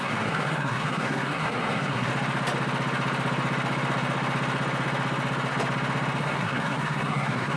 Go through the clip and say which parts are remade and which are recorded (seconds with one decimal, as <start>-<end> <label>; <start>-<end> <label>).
0.0-2.1 remade; 2.1-6.2 recorded; 6.2-7.6 remade